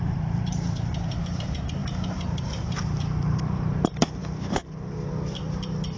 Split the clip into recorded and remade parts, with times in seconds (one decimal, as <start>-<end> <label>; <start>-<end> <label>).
0.0-6.0 remade